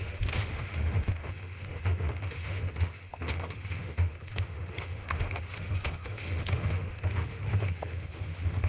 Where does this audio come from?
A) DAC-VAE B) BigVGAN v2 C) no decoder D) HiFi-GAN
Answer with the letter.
A